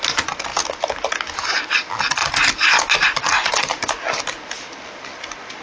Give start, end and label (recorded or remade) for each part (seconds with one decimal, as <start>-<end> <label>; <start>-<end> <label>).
0.0-2.2 recorded; 2.2-5.6 remade